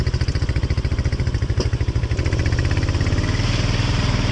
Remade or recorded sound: recorded